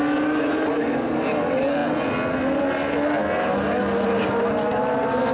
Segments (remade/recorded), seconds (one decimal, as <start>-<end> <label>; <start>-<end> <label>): 0.0-5.3 recorded